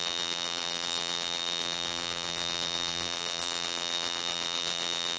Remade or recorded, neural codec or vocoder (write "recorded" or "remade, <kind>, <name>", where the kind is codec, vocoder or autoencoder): remade, vocoder, BigVGAN v2